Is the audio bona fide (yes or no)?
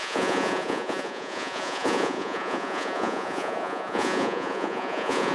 no